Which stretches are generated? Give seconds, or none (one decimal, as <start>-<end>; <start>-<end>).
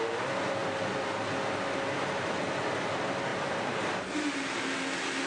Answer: 3.3-4.0